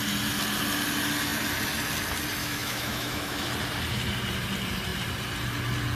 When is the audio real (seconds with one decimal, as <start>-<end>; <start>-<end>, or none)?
0.0-2.4; 3.5-6.0